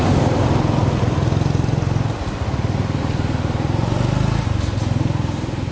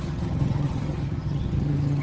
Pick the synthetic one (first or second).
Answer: second